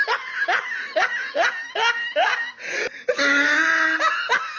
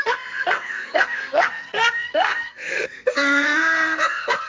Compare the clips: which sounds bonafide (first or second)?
first